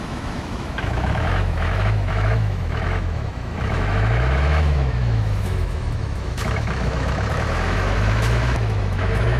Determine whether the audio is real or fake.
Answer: fake